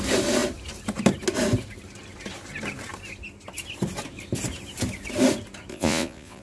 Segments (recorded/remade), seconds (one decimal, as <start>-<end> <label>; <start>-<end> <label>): 0.0-5.7 recorded; 5.7-6.4 remade